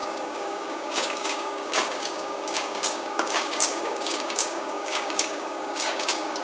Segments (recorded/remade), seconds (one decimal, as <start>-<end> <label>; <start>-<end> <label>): 0.0-6.4 remade